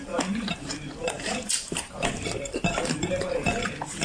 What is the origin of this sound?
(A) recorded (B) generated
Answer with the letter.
B